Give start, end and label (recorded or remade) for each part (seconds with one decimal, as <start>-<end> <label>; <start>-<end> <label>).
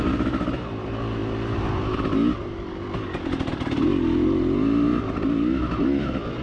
0.0-6.4 recorded